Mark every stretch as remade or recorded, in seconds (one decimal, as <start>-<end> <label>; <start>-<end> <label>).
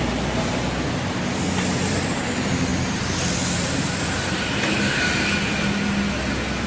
0.0-6.7 recorded